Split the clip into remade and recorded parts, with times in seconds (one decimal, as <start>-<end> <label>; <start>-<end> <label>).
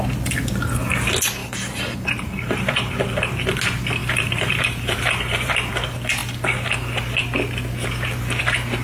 0.0-1.4 recorded; 1.4-2.9 remade; 2.9-4.0 recorded; 4.0-5.7 remade; 5.7-8.8 recorded